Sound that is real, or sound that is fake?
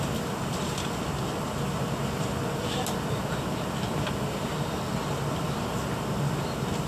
real